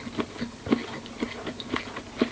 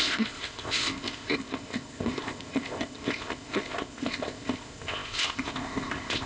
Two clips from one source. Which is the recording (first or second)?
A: first